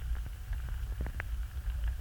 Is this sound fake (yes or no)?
no